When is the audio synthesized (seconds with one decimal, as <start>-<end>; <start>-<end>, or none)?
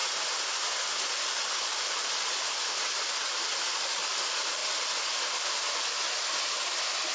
none